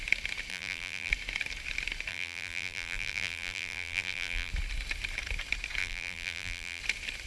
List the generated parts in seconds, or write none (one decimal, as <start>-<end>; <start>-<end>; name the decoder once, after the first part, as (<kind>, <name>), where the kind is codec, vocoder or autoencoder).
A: 0.5-1.1 (vocoder, BigVGAN v2); 2.1-4.5; 5.8-6.8